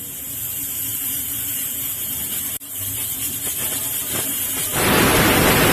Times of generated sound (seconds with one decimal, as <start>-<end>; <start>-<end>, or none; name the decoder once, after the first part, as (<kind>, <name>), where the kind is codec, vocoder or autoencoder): 0.9-3.4 (vocoder, BigVGAN v2); 4.0-4.6